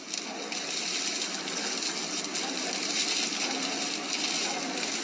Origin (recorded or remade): recorded